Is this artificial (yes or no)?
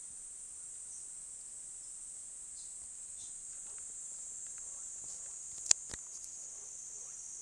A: no